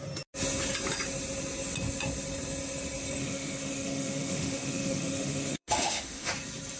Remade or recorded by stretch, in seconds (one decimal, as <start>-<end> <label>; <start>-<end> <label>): 0.0-3.2 recorded; 3.2-6.3 remade; 6.3-6.8 recorded